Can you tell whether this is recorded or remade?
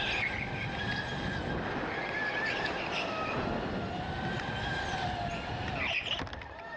recorded